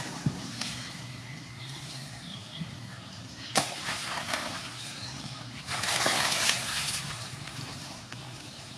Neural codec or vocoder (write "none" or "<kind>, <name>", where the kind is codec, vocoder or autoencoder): codec, SNAC